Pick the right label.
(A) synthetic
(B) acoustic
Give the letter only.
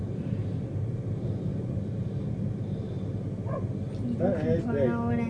B